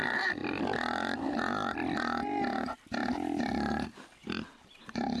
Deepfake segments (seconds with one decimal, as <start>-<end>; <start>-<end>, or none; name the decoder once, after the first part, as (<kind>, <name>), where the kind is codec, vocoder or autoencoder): none